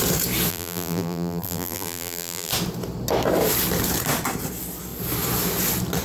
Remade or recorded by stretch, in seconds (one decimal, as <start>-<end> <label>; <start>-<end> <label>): 0.0-0.5 recorded; 0.5-2.5 remade; 2.5-6.0 recorded